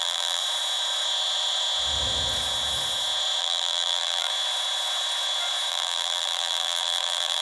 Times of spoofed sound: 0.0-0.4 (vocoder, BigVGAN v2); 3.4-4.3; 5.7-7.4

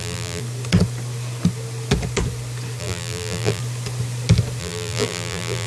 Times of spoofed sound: 0.0-0.4 (vocoder, BigVGAN v2); 2.8-3.6; 4.6-5.7

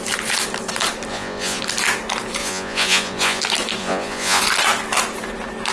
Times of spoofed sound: 1.1-1.6 (vocoder, Vocos); 2.4-3.4; 3.8-4.4

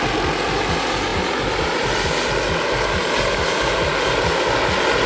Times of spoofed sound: none

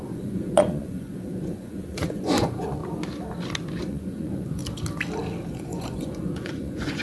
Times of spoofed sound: 0.0-2.8 (vocoder, Vocos); 3.8-4.6; 5.5-7.0

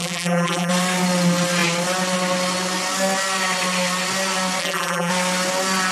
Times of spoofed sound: 0.0-0.7 (vocoder, BigVGAN v2); 4.6-5.1

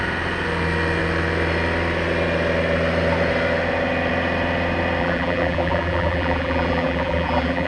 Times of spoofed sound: 5.0-7.7 (vocoder, BigVGAN v2)

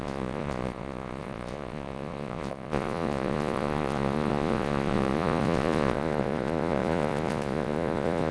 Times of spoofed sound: 0.0-8.3 (vocoder, Vocos)